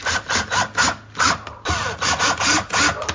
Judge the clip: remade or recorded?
recorded